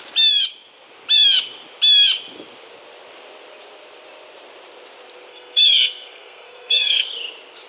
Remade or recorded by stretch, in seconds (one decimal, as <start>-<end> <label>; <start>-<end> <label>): 0.0-5.3 recorded; 5.3-7.1 remade; 7.1-7.7 recorded